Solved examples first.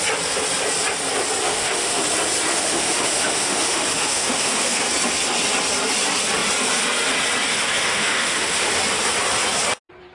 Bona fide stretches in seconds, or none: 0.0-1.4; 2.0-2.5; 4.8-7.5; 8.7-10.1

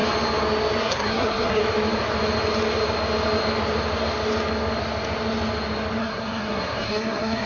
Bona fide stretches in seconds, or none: 0.0-0.8; 1.6-6.0

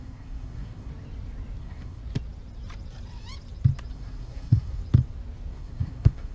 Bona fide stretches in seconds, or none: 0.9-1.6; 2.0-3.9; 4.8-5.5

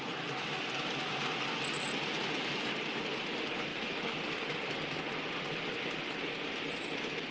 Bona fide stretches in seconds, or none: 0.0-3.7; 4.4-7.3

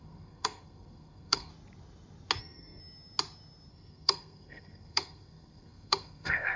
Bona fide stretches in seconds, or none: 1.5-2.4; 2.8-3.7

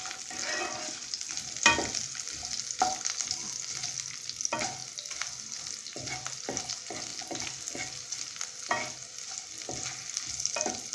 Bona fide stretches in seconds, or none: 0.0-10.9

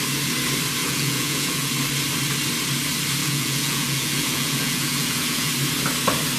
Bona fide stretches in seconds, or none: 0.0-0.8; 1.7-3.2; 5.5-6.4

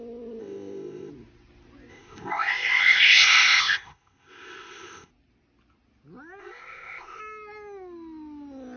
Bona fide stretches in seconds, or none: 0.0-0.4; 1.1-1.9; 5.1-6.4; 7.2-8.8